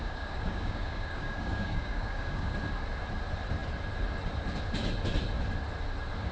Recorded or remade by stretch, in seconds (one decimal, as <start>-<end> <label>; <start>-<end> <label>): 0.0-2.5 remade; 2.5-6.3 recorded